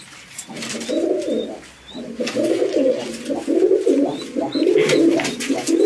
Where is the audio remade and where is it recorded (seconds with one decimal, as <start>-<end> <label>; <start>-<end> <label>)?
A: 0.0-2.6 recorded; 2.6-3.1 remade; 3.1-5.9 recorded